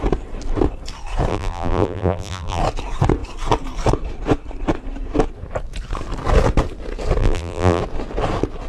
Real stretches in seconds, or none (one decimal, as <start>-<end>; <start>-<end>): 0.0-1.3; 2.6-7.2; 7.8-8.7